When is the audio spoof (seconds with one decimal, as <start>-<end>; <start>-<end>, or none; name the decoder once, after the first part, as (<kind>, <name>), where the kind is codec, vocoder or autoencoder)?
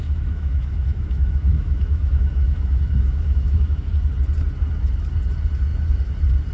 0.0-3.9 (autoencoder, DAC-VAE)